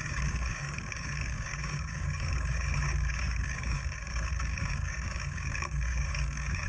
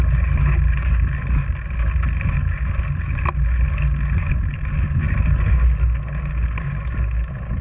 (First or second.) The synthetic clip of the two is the first